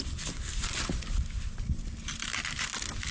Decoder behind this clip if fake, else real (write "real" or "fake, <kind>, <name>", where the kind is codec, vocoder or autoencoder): real